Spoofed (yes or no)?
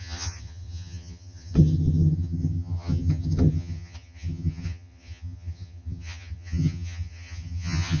yes